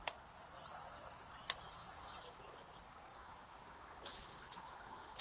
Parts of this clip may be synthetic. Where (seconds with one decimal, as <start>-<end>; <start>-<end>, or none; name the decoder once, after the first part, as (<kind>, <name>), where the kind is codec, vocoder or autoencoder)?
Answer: 1.8-2.4 (autoencoder, DAC-VAE); 3.1-5.2